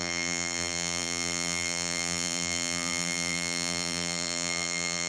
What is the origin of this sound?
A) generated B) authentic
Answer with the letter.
A